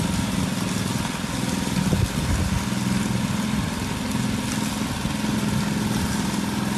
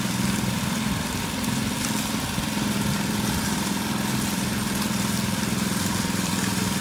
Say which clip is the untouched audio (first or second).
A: first